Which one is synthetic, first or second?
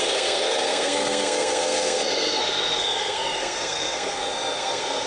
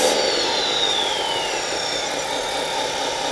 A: first